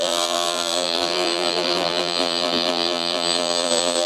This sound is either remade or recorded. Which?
remade